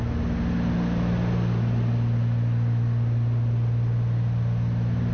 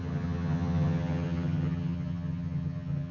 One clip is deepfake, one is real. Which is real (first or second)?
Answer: first